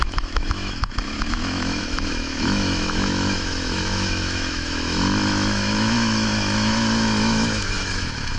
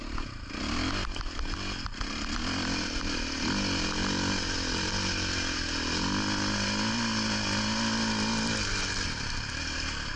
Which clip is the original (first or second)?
second